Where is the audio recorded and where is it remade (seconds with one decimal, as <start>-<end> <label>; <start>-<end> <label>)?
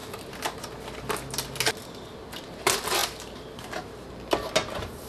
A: 0.0-5.1 recorded